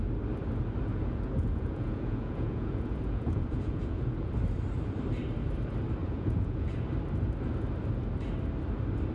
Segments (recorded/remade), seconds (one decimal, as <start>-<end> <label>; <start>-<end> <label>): 0.0-0.9 recorded; 0.9-4.3 remade; 4.3-6.0 recorded; 6.0-6.7 remade; 6.7-9.1 recorded